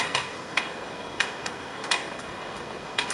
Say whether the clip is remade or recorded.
remade